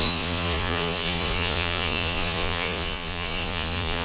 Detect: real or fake fake